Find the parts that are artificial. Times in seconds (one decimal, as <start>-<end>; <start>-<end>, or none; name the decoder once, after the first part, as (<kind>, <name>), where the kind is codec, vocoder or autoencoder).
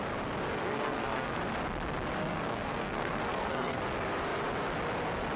0.6-1.4 (codec, SNAC); 2.2-3.8